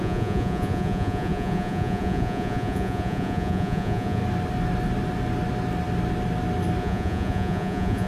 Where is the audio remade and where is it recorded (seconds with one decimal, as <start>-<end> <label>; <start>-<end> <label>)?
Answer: 0.0-4.2 remade; 4.2-6.8 recorded; 6.8-8.1 remade